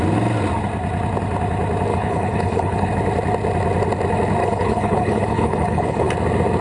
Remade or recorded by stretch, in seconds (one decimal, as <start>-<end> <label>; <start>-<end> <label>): 0.0-1.9 recorded; 1.9-2.9 remade; 2.9-4.4 recorded; 4.4-6.1 remade; 6.1-6.6 recorded